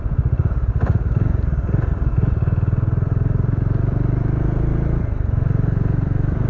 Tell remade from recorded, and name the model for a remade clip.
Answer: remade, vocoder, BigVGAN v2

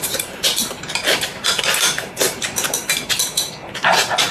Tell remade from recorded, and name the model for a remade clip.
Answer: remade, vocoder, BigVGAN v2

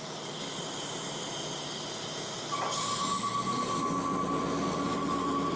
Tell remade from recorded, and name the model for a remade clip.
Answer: recorded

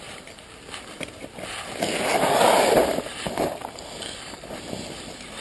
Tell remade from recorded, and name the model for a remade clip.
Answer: recorded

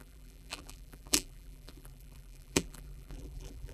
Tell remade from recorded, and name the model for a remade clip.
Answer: remade, vocoder, BigVGAN v2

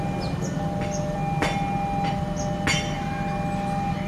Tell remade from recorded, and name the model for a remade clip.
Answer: recorded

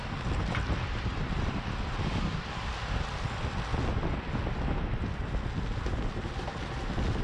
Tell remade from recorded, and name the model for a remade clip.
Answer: recorded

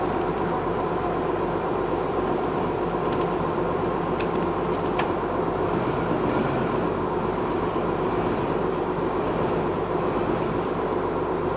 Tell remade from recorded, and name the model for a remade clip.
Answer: remade, vocoder, BigVGAN v2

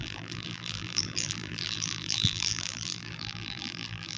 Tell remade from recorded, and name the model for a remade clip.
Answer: remade, vocoder, BigVGAN v2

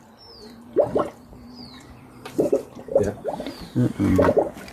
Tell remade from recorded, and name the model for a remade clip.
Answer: remade, vocoder, BigVGAN v2